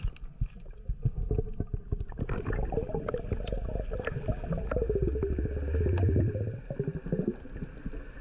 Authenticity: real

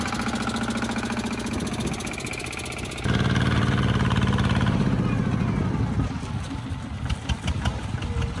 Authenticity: real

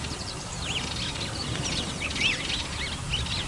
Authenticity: real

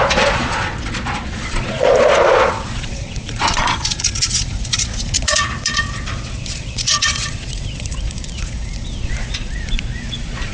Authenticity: fake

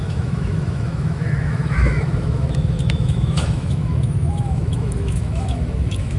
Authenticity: fake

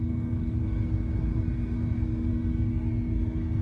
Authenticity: fake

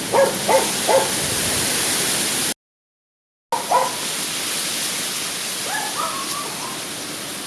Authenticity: real